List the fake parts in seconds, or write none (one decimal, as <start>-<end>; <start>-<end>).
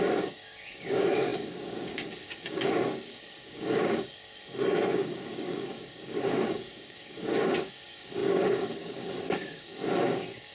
0.0-4.4; 4.9-10.5